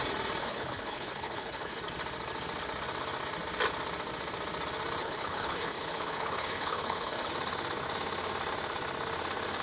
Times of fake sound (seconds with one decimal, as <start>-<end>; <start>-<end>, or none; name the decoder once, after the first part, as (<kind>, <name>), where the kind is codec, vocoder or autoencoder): 0.4-1.8 (codec, HILCodec); 5.0-7.3